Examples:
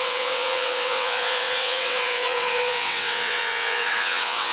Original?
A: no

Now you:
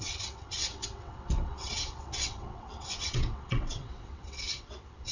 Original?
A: no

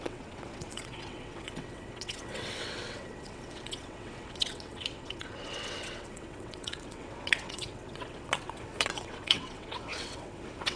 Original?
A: no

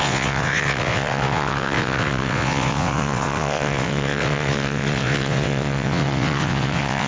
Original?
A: no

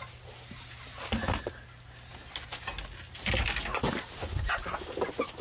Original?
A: yes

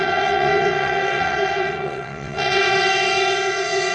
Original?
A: no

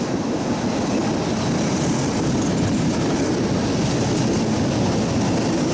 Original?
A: yes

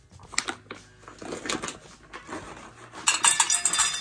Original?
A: yes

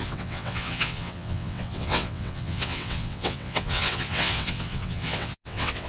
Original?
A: no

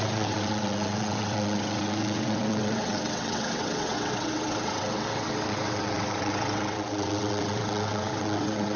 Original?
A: no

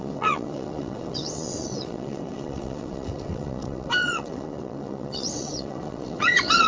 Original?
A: no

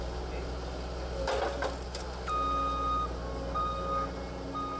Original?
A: yes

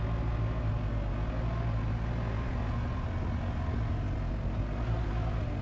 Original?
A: yes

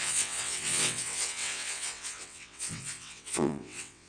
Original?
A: no